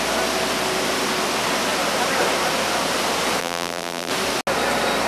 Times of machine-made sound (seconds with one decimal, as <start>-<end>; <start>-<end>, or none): 3.4-4.1